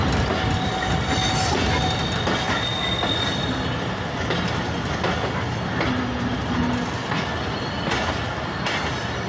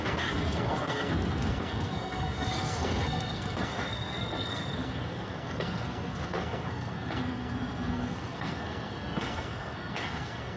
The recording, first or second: first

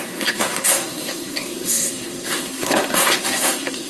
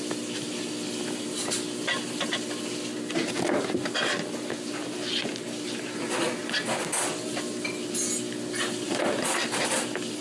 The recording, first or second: second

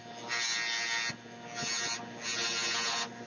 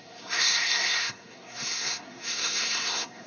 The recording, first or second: first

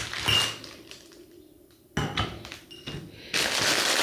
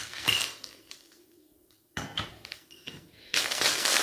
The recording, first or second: first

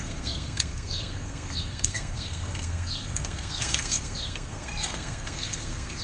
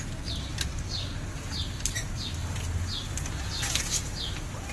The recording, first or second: second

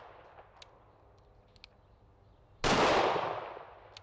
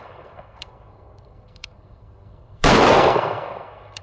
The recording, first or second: first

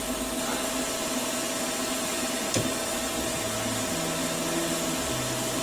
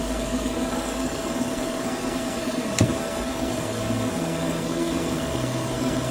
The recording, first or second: first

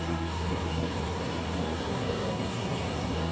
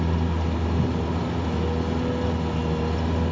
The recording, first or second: second